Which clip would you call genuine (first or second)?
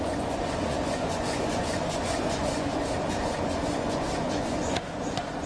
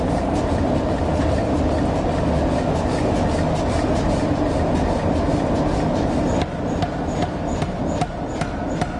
second